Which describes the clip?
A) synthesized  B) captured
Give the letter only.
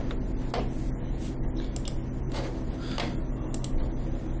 B